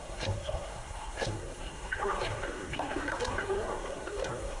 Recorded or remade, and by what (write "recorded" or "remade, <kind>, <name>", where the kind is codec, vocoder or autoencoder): remade, codec, SNAC